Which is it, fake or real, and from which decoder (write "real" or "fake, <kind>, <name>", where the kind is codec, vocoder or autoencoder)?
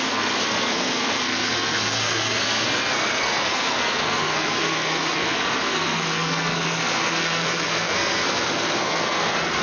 fake, codec, SNAC